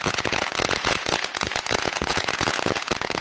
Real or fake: fake